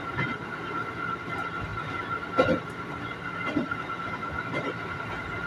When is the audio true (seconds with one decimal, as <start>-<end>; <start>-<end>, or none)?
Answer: 0.0-5.5